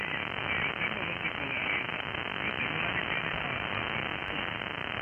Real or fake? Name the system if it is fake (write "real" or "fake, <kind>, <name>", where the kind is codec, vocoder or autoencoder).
real